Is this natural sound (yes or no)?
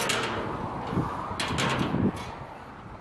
yes